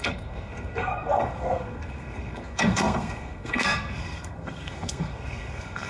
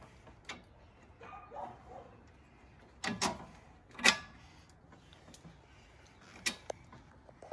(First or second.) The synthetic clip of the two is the first